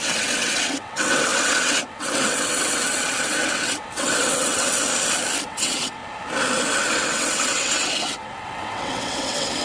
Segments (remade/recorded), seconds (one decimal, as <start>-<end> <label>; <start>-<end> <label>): 0.0-4.8 remade; 4.8-5.4 recorded; 5.4-6.0 remade; 6.0-6.8 recorded; 6.8-9.6 remade